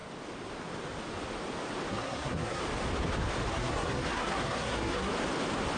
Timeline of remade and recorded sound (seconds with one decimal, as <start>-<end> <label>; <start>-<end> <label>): 0.0-1.9 recorded; 1.9-2.6 remade; 2.6-3.5 recorded; 3.5-5.1 remade; 5.1-5.8 recorded